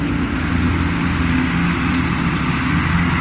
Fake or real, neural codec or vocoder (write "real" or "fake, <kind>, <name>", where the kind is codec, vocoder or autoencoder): real